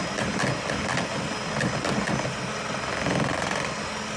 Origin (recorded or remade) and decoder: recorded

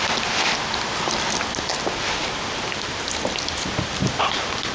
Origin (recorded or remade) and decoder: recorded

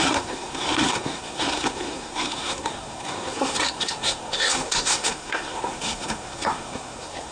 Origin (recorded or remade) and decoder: remade, codec, SNAC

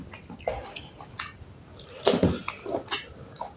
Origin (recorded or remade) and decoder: recorded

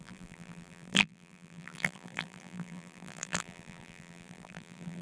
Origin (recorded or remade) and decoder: remade, vocoder, BigVGAN v2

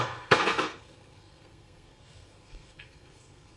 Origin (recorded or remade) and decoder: remade, codec, SNAC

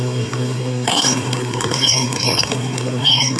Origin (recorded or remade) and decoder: remade, codec, SNAC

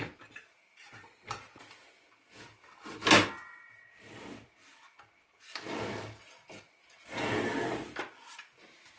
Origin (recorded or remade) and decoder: recorded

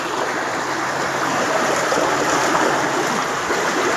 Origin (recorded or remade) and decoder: recorded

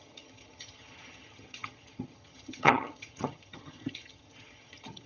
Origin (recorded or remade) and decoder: remade, vocoder, HiFi-GAN